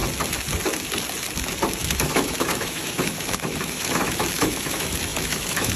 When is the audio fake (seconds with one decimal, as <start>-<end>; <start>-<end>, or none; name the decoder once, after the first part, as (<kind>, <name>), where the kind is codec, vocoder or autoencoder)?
1.8-5.8 (autoencoder, DAC-VAE)